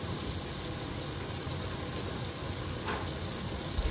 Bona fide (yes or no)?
yes